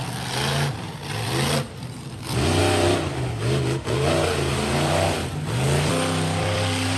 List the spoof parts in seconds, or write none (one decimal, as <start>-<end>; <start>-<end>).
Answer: 0.0-2.6; 4.5-5.2; 6.4-7.0